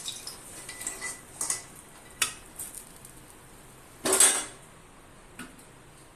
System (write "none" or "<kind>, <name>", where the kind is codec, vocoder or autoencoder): none